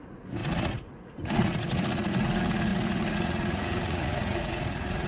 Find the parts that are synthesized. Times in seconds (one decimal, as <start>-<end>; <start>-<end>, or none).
0.0-5.1